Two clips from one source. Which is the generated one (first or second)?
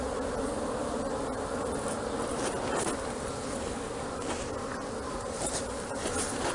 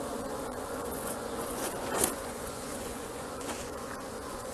second